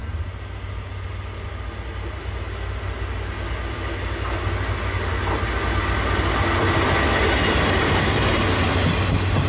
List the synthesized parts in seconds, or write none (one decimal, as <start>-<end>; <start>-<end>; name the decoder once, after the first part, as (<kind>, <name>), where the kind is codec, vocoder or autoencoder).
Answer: none